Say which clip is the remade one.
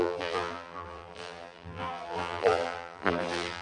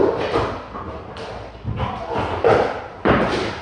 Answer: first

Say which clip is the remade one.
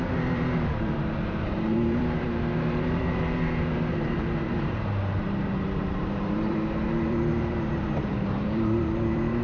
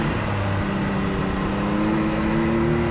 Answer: first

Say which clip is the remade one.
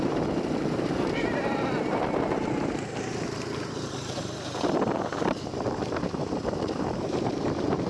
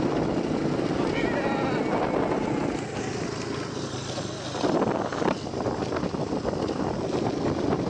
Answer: first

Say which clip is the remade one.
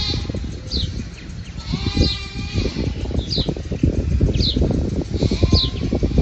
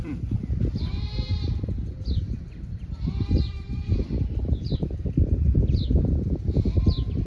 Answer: second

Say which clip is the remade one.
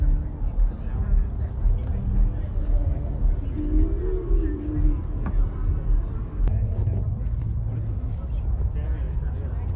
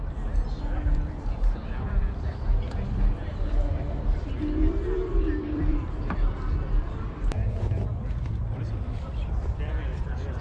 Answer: second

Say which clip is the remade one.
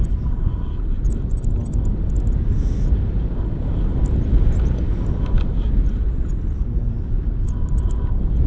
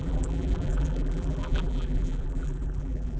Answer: second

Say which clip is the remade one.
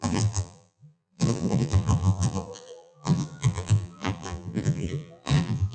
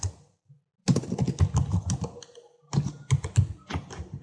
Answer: first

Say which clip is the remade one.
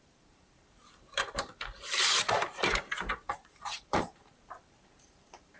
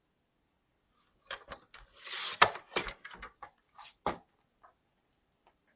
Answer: first